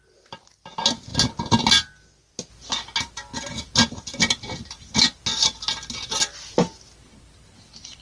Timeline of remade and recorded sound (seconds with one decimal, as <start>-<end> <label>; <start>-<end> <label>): 0.0-8.0 recorded